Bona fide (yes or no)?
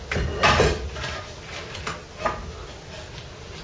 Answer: yes